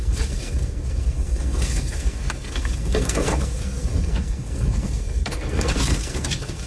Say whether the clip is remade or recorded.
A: remade